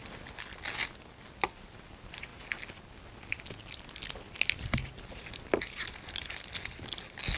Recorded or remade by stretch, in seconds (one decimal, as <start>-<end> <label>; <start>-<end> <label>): 0.0-7.4 recorded